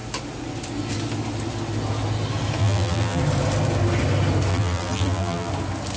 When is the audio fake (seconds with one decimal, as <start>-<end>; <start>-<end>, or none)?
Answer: 2.6-3.2; 4.5-5.5